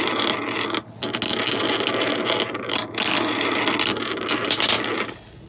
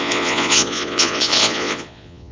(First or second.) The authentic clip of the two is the first